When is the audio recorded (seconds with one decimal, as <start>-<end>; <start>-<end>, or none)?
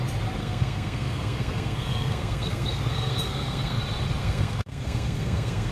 0.0-0.4; 3.8-4.2